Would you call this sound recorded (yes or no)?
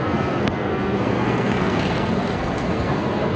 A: no